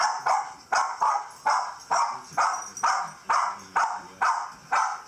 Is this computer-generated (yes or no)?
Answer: no